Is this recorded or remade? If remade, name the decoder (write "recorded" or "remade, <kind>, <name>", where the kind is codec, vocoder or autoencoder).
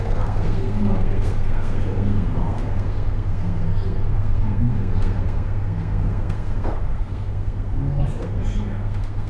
remade, codec, SNAC